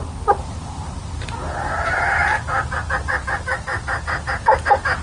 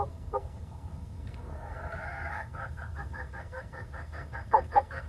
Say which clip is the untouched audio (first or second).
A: first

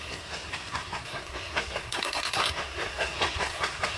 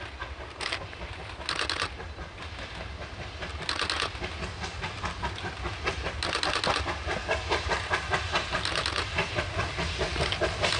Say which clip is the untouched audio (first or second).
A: second